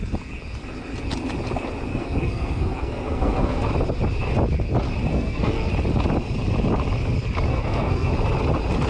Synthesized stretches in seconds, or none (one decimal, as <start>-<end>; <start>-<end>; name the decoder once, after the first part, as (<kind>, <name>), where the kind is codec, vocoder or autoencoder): 1.9-3.7 (codec, SNAC); 5.1-5.7; 7.5-8.1

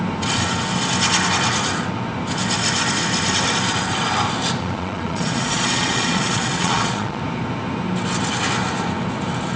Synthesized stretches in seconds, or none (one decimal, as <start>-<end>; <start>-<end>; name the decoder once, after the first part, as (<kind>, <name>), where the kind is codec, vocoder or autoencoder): 4.6-7.2 (vocoder, Vocos)

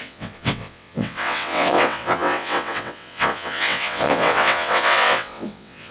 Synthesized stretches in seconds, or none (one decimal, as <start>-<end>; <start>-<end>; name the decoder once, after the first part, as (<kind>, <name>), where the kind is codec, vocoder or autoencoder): 0.0-5.9 (vocoder, WaveNeXt)

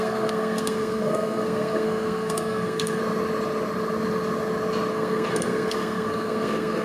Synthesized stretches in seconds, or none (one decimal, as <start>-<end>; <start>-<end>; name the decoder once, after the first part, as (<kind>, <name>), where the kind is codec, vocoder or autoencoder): 0.0-3.0 (codec, SNAC); 4.9-6.8

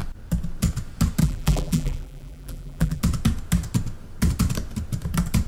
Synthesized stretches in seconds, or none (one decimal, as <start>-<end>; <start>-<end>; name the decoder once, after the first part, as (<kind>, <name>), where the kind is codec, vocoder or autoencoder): 1.2-3.0 (vocoder, BigVGAN v2)

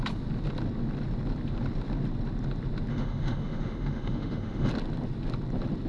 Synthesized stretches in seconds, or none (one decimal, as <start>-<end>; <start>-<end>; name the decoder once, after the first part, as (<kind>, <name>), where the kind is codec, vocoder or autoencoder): 2.9-4.7 (autoencoder, DAC-VAE)

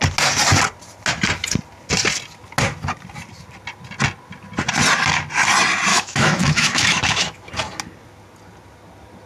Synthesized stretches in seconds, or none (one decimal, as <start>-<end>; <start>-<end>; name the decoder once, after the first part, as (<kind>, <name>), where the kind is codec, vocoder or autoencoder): 5.9-7.4 (autoencoder, DAC-VAE)